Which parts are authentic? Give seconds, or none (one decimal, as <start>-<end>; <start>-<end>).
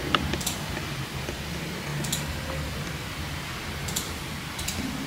0.0-1.9